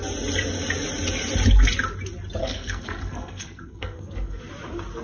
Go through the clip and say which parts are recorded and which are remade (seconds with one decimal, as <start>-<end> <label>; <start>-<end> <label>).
0.0-2.4 recorded; 2.4-4.4 remade; 4.4-5.0 recorded